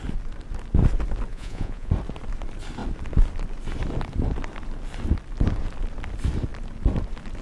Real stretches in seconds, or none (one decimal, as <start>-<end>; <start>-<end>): 0.0-1.3; 1.9-7.4